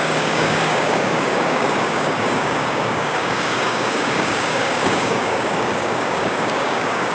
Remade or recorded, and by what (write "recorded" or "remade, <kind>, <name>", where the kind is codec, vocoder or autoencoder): remade, codec, DAC